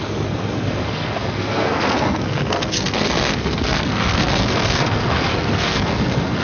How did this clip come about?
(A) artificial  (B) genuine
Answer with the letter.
A